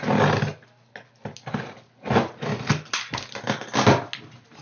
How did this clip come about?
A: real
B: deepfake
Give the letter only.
A